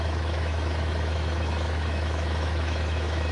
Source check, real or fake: fake